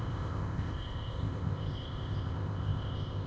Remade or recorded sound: remade